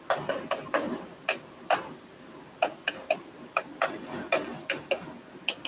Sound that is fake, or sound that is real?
real